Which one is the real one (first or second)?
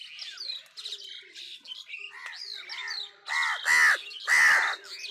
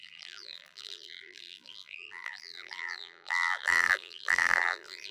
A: first